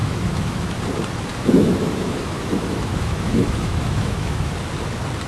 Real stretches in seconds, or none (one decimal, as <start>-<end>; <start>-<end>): 0.8-1.3; 4.5-5.3

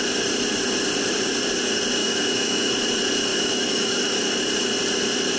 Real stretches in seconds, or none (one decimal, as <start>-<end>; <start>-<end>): 0.0-2.0; 2.7-3.3; 4.2-5.4

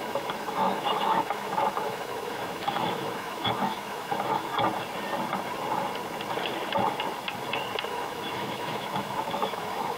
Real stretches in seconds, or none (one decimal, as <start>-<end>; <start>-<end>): 4.5-7.9

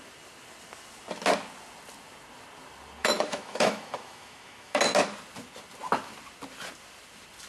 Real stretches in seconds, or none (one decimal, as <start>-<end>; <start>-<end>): 0.0-3.0; 4.8-7.5

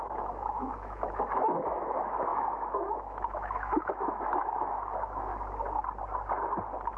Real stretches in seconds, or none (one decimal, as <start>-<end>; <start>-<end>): 5.3-7.0